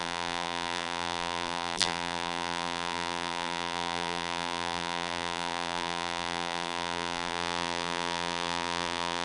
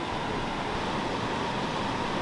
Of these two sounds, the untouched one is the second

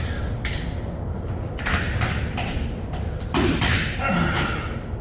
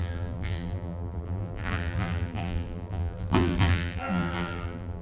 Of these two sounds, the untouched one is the first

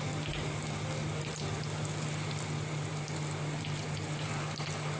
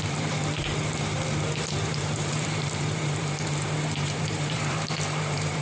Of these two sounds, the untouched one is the first